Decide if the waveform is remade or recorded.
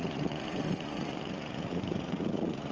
remade